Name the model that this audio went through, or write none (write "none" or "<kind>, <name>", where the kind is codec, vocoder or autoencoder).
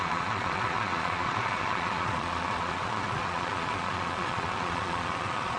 vocoder, Vocos